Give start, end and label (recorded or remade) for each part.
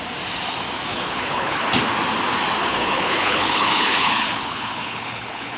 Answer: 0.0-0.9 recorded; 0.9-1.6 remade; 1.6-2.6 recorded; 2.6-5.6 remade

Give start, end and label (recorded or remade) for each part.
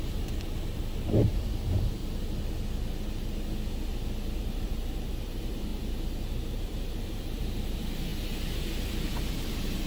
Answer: 0.0-2.0 remade; 2.0-4.4 recorded; 4.4-9.9 remade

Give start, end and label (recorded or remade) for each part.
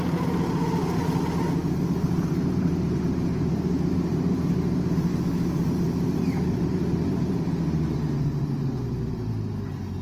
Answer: 0.0-1.6 recorded; 1.6-4.5 remade; 4.5-5.1 recorded; 5.1-7.5 remade; 7.5-10.0 recorded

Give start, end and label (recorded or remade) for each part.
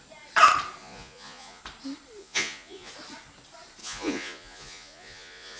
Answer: 0.0-0.8 recorded; 0.8-1.6 remade; 1.6-2.2 recorded; 2.2-2.9 remade; 2.9-3.8 recorded; 3.8-5.6 remade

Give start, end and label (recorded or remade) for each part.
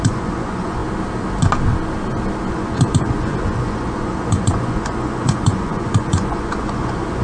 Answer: 0.0-0.8 remade; 0.8-2.5 recorded; 2.5-7.2 remade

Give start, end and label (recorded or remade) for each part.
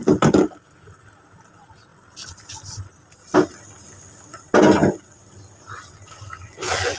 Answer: 0.0-7.0 recorded